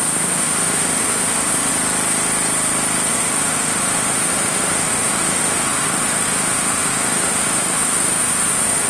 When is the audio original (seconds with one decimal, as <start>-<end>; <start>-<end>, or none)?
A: 1.7-3.1